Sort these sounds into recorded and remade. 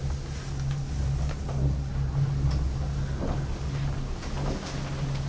recorded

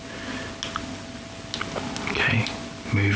recorded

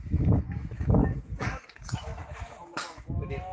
remade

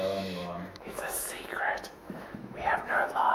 remade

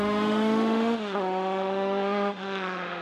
remade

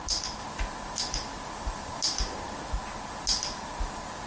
recorded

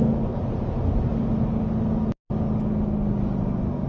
recorded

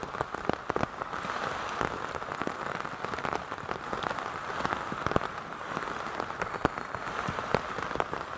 recorded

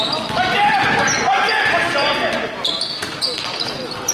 recorded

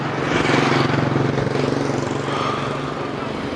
recorded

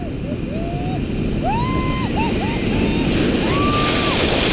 recorded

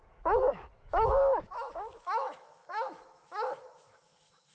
remade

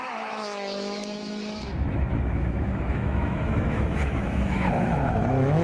remade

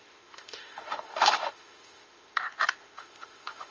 remade